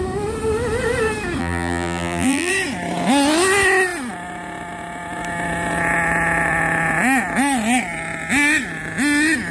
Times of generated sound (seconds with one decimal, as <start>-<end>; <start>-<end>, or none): 1.4-2.5